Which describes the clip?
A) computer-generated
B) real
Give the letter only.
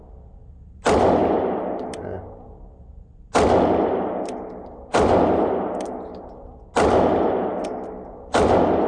B